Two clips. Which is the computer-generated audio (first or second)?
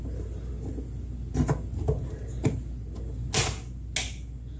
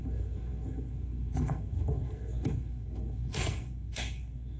second